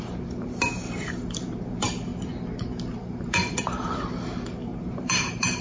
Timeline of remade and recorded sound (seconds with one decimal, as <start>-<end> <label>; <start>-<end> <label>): 0.0-2.1 remade; 2.1-2.9 recorded; 2.9-5.6 remade